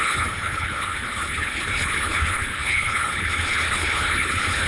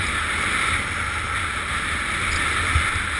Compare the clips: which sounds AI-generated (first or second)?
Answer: first